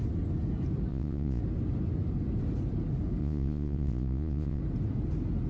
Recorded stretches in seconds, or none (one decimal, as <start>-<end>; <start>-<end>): 0.0-0.9; 1.4-3.2; 4.6-5.5